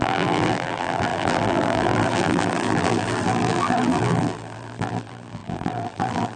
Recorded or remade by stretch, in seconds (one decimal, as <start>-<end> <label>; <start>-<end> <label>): 0.0-6.4 remade